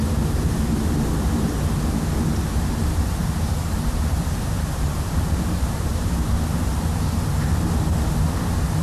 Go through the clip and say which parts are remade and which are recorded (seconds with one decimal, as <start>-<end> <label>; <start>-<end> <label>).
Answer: 0.0-3.2 recorded; 3.2-5.9 remade; 5.9-8.8 recorded

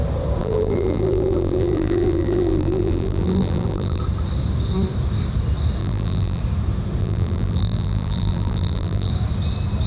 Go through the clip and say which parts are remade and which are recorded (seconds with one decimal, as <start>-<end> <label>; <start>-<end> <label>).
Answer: 0.0-0.4 recorded; 0.4-4.0 remade; 4.0-5.8 recorded; 5.8-6.4 remade; 6.4-7.0 recorded; 7.0-9.1 remade; 9.1-9.9 recorded

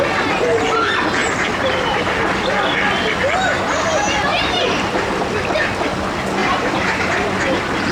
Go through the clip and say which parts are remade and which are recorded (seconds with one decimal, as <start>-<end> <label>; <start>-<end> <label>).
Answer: 0.0-1.2 recorded; 1.2-2.2 remade; 2.2-4.3 recorded; 4.3-5.0 remade; 5.0-6.4 recorded; 6.4-7.9 remade

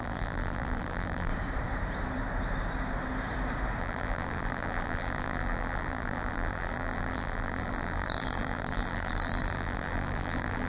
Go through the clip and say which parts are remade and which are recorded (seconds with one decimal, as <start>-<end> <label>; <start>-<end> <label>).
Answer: 0.0-1.3 remade; 1.3-3.8 recorded; 3.8-10.7 remade